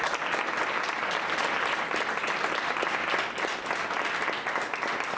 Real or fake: real